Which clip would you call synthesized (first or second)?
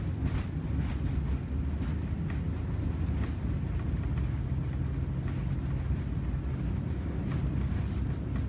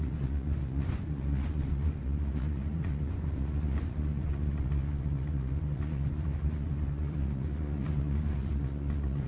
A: second